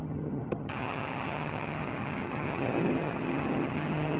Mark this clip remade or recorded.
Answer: remade